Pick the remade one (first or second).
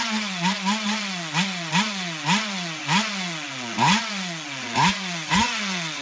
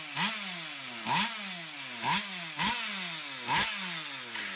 first